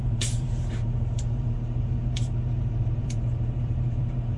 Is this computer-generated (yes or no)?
yes